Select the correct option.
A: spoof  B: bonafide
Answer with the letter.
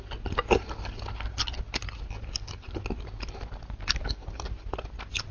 B